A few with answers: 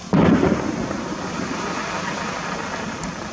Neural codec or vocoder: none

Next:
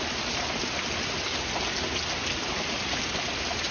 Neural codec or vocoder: none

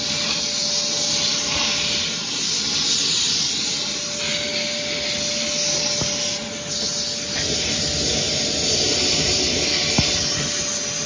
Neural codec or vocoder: none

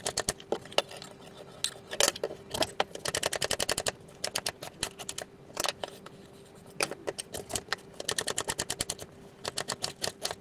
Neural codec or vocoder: none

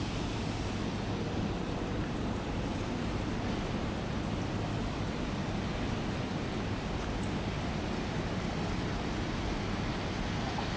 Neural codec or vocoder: none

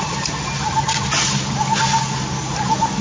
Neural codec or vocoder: none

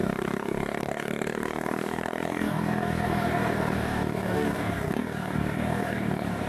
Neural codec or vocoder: codec, DAC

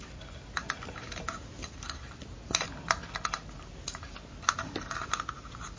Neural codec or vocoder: none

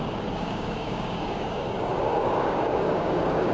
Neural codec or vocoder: codec, DAC